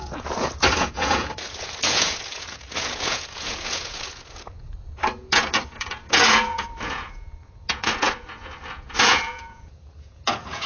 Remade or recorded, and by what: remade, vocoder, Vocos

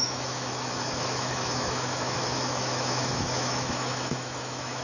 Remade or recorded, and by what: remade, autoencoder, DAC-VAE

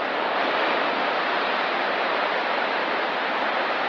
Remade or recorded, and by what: remade, vocoder, BigVGAN v2